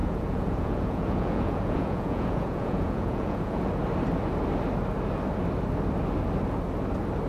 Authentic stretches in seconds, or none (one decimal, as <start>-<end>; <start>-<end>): 3.7-7.3